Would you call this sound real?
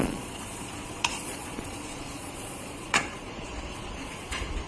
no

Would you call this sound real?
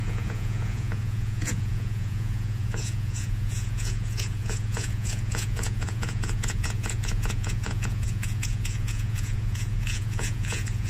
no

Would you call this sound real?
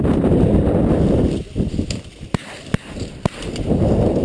no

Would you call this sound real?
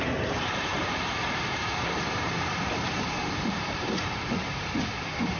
no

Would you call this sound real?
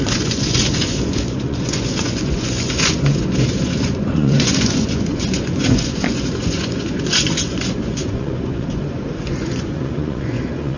no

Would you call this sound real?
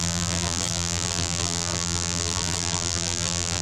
no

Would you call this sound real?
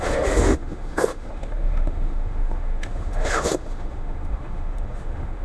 no